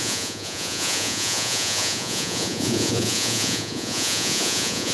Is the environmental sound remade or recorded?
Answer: remade